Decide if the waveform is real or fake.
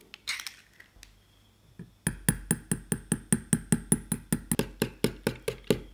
real